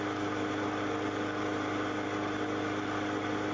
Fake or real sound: real